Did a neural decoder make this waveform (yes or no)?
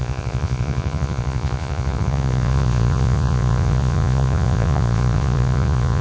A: yes